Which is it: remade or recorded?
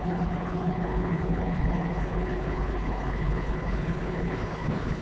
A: remade